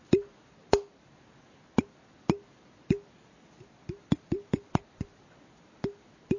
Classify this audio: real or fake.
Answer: real